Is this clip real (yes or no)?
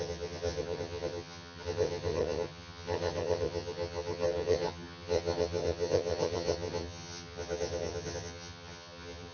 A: no